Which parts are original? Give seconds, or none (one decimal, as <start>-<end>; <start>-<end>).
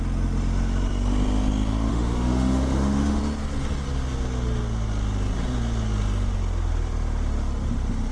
0.0-1.9; 3.2-8.1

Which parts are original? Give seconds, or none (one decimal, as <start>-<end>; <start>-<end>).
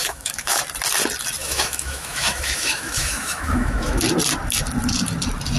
0.6-1.4; 4.0-5.6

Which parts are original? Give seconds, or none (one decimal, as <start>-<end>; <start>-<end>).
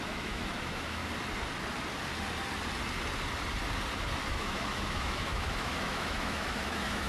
1.0-4.3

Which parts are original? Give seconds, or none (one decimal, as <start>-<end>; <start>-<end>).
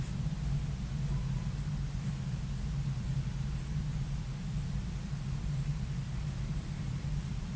0.0-7.6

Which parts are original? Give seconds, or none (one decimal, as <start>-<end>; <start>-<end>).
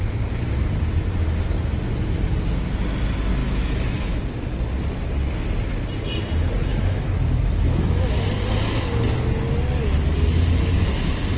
0.0-3.4; 4.2-6.7; 8.2-11.4